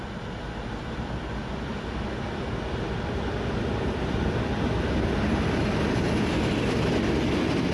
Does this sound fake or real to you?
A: real